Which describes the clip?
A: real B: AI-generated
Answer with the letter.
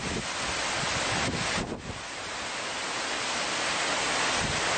A